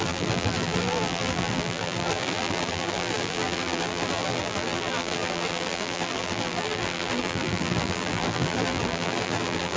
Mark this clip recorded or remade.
remade